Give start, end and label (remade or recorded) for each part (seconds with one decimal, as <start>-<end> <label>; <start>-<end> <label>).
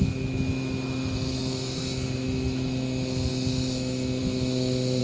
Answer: 0.0-5.0 remade